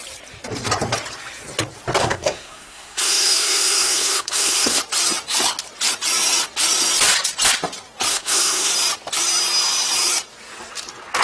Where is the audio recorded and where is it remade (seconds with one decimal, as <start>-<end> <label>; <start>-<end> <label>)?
0.0-2.0 recorded; 2.0-4.8 remade; 4.8-8.1 recorded; 8.1-8.7 remade; 8.7-11.2 recorded